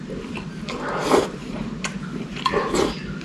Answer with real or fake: fake